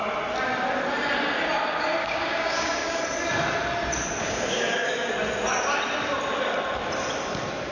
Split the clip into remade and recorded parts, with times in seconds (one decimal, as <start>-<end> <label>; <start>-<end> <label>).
0.0-2.0 recorded; 2.0-3.0 remade; 3.0-4.2 recorded; 4.2-5.1 remade; 5.1-7.7 recorded